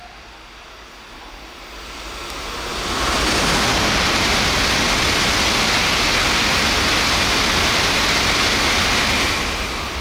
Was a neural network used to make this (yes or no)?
no